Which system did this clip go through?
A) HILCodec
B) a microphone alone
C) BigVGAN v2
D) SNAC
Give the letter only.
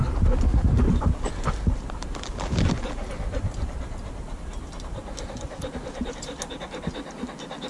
B